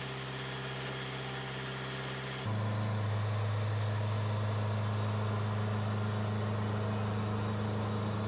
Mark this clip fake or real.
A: real